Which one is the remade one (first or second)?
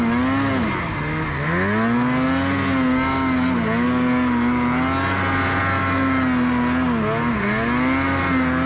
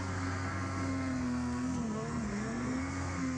second